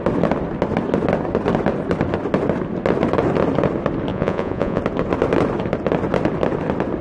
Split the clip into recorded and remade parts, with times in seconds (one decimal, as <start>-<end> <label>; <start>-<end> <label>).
0.0-4.1 recorded; 4.1-4.8 remade; 4.8-7.0 recorded